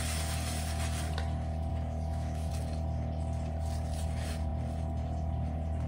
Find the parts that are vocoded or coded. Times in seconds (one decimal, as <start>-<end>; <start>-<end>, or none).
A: 1.7-2.5